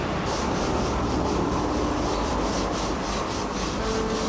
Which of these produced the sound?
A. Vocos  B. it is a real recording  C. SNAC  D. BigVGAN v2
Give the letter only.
B